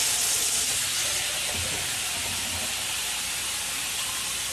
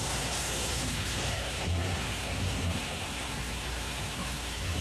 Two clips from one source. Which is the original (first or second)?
first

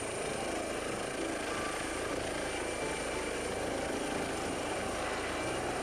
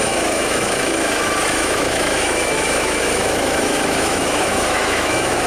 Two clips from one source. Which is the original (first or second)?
first